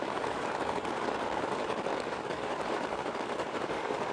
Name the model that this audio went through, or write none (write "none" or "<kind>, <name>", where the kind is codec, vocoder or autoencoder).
codec, DAC